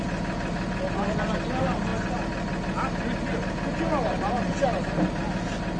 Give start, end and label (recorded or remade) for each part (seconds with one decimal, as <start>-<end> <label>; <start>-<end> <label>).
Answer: 0.0-5.8 recorded